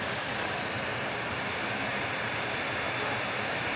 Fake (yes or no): yes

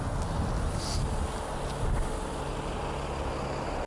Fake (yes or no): no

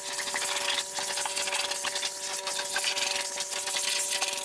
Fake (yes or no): no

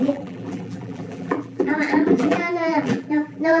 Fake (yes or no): yes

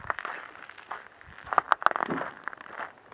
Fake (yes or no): no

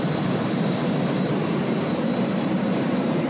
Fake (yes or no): yes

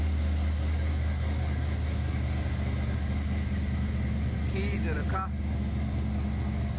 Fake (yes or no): no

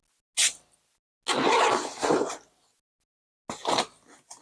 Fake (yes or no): no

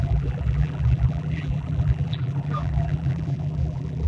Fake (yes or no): yes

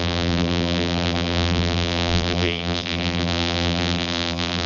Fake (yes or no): yes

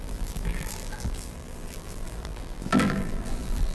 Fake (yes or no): yes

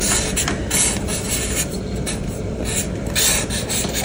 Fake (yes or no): no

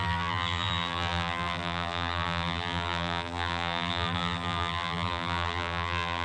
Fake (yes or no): yes